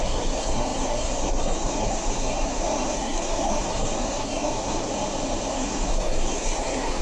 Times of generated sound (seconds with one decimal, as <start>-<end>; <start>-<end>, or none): 0.0-4.9; 5.5-7.0